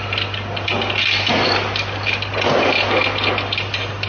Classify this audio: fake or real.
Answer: real